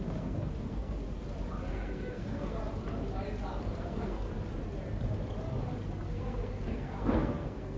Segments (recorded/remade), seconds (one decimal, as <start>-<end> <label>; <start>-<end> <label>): 0.0-1.0 remade; 1.0-1.7 recorded; 1.7-2.6 remade; 2.6-3.6 recorded; 3.6-4.3 remade; 4.3-6.1 recorded; 6.1-7.8 remade